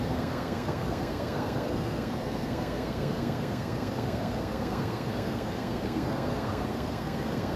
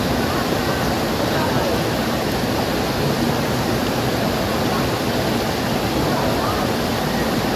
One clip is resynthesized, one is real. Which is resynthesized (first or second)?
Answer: first